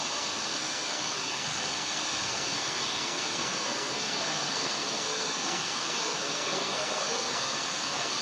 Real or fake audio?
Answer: fake